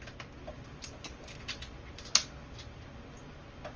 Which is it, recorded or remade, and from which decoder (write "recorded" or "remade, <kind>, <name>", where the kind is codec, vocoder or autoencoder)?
recorded